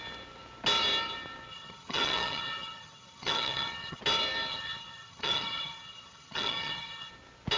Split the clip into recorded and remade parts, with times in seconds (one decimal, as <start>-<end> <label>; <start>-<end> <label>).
0.0-1.5 recorded; 1.5-4.0 remade; 4.0-4.5 recorded; 4.5-7.1 remade; 7.1-7.6 recorded